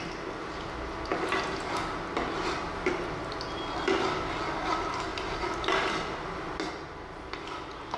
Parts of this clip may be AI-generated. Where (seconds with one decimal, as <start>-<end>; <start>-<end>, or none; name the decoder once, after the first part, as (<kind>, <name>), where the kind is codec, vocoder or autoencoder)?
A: none